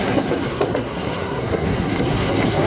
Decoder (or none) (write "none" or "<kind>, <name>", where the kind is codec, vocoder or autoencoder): codec, SNAC